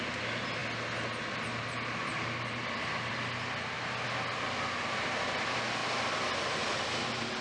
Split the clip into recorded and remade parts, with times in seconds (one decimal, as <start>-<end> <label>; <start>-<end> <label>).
0.0-7.4 recorded

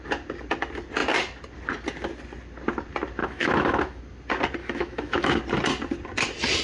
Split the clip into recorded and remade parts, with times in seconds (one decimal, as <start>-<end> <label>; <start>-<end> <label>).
0.0-3.2 recorded; 3.2-4.0 remade; 4.0-4.6 recorded; 4.6-5.4 remade; 5.4-6.6 recorded

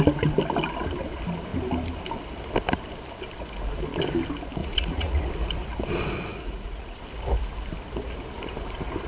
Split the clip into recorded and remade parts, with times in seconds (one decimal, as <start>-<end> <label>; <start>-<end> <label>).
0.0-4.6 recorded; 4.6-5.2 remade; 5.2-6.3 recorded; 6.3-7.0 remade; 7.0-9.1 recorded